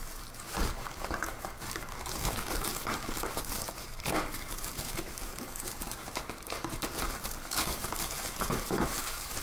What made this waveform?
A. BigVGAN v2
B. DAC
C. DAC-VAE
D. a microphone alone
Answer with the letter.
B